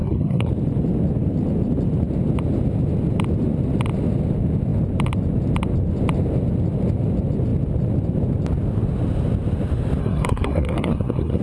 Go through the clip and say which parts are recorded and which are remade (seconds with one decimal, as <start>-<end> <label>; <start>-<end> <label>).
0.0-0.5 remade; 0.5-10.0 recorded; 10.0-11.4 remade